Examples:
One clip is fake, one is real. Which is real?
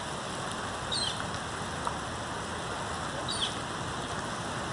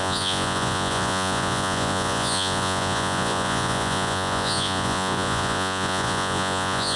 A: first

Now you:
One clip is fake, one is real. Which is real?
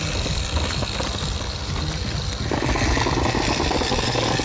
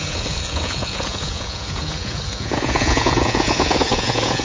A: first